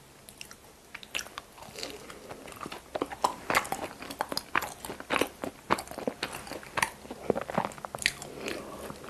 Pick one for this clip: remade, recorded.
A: recorded